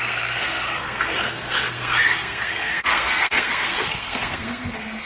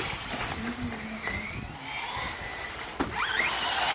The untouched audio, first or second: second